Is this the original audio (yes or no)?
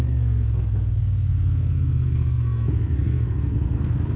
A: no